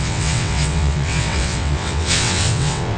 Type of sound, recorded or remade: remade